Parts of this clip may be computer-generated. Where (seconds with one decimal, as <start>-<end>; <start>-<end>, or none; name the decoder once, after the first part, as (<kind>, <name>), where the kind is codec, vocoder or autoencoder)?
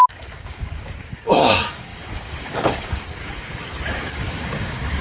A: 0.0-5.0 (codec, DAC)